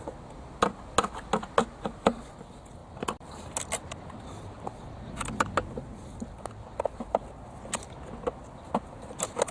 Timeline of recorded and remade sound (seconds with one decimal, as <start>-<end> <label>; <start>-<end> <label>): 0.0-9.5 recorded